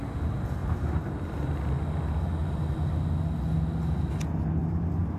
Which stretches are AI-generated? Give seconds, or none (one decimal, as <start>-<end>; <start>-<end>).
0.6-1.8; 2.4-2.9